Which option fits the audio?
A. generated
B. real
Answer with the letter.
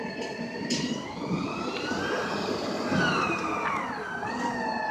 B